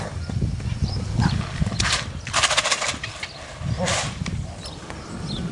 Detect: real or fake real